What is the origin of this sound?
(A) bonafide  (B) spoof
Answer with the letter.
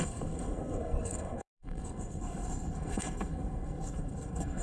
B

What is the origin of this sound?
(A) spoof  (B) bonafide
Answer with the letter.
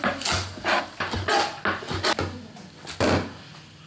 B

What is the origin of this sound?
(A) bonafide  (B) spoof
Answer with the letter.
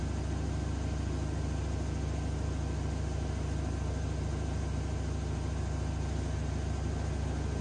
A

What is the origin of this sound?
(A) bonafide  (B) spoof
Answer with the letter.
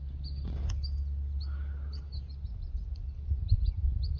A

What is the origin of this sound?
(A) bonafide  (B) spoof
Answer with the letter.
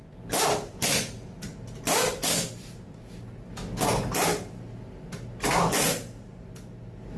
A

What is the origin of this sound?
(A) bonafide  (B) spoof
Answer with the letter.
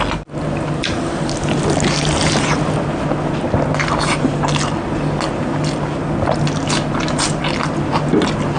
A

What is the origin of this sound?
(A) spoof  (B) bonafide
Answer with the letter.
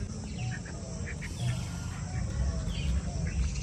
B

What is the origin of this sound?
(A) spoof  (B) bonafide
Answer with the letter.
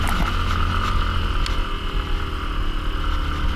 B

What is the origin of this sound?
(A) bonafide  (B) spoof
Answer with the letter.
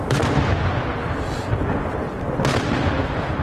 A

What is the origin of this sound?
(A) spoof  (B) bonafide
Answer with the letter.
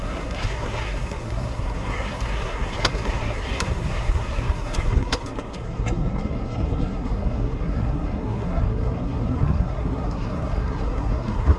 A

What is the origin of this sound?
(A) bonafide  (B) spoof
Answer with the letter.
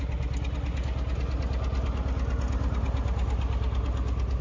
A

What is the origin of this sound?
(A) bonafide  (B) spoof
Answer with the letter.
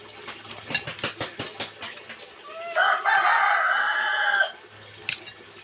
A